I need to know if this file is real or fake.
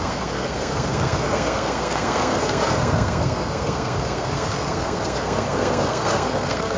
fake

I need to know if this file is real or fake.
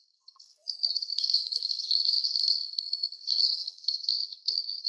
fake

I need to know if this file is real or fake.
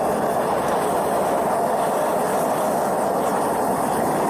real